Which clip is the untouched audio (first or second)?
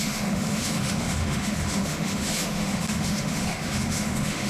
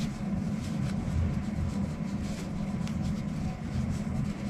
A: second